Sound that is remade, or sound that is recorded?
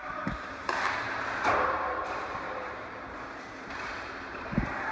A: remade